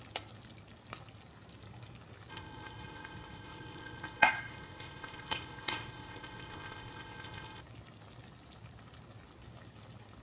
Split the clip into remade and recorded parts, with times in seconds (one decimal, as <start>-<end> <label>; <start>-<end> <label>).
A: 0.0-2.3 recorded; 2.3-7.6 remade; 7.6-10.2 recorded